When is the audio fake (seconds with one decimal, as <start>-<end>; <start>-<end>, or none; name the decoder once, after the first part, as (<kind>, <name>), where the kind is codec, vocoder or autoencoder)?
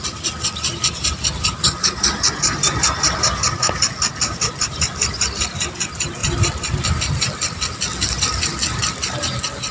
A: none